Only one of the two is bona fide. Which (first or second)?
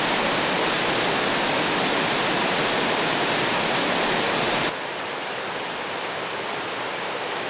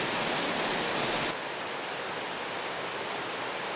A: second